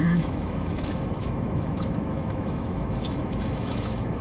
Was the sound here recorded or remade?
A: remade